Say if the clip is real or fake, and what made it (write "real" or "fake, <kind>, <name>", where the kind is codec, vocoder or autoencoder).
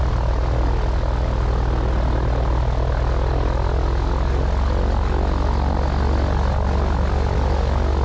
real